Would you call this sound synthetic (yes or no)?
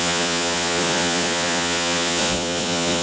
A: yes